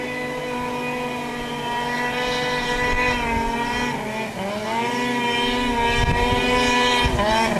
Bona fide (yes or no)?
yes